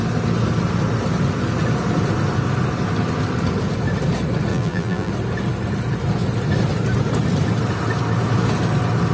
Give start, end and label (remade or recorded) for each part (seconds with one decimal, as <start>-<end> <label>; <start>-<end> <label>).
0.0-4.5 recorded; 4.5-5.1 remade; 5.1-9.1 recorded